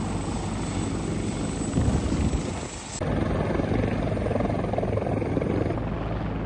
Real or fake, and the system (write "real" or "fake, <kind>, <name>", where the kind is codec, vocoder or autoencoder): real